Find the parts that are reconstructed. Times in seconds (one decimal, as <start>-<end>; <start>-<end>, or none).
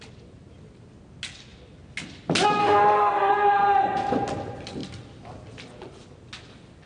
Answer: 2.6-3.3